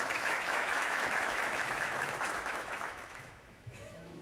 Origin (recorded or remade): remade